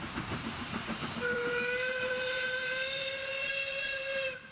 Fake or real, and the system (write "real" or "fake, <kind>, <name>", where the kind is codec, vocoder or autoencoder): fake, vocoder, BigVGAN v2